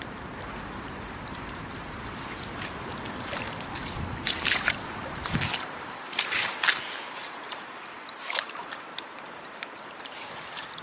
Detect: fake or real fake